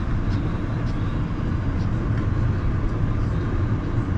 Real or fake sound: real